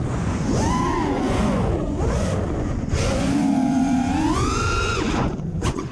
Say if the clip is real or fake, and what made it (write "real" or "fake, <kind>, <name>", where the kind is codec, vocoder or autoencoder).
fake, vocoder, Vocos